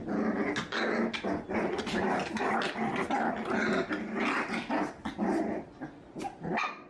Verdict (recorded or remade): recorded